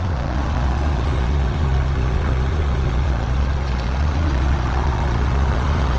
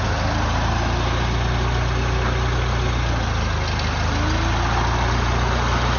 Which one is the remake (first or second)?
first